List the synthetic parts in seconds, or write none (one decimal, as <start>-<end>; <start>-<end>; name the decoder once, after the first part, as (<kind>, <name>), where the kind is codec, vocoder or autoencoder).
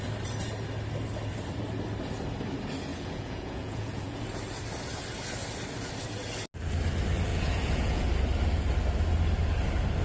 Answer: 2.9-4.2 (vocoder, Vocos); 7.3-8.1